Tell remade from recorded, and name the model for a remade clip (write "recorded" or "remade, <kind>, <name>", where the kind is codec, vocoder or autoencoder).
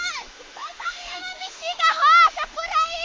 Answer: remade, autoencoder, DAC-VAE